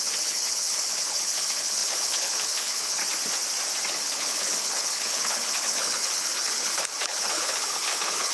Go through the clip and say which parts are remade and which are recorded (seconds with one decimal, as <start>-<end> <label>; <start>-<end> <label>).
0.0-3.0 remade; 3.0-3.9 recorded; 3.9-8.3 remade